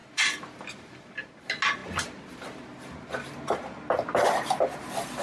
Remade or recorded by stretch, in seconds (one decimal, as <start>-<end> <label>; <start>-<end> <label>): 0.0-5.2 recorded